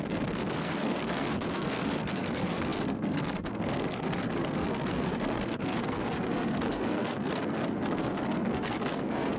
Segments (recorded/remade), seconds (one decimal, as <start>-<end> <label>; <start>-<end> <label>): 0.0-9.4 remade